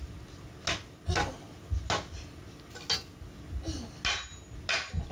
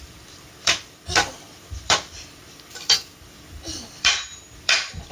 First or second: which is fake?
second